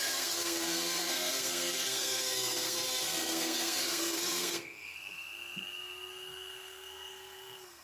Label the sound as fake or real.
fake